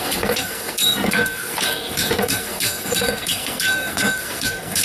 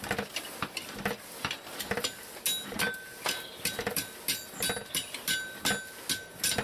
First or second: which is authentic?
second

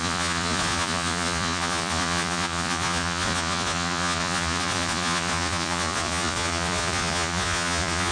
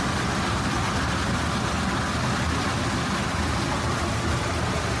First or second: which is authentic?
second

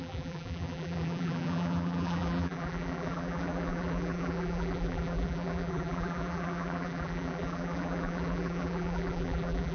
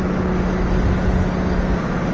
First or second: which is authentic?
second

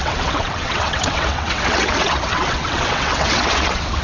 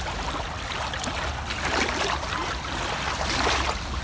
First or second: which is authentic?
second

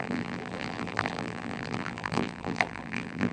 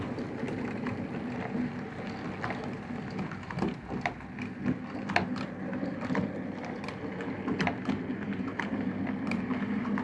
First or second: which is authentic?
second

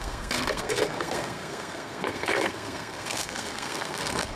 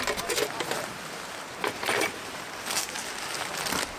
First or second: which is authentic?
second